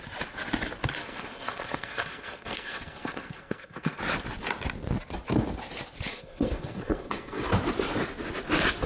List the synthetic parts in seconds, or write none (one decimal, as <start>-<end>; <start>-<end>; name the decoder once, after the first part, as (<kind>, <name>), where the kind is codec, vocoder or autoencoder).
1.0-4.0 (codec, SNAC); 6.1-7.4